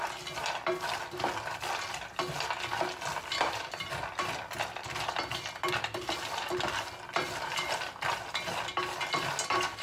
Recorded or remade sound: recorded